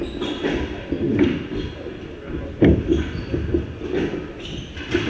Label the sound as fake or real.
real